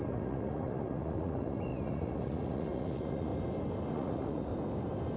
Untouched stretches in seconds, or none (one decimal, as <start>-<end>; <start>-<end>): 3.3-3.9; 4.5-5.2